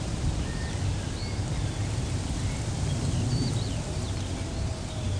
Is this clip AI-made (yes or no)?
no